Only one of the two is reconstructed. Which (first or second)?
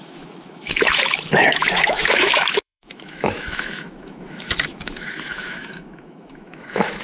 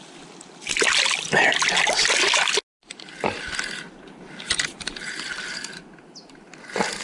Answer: first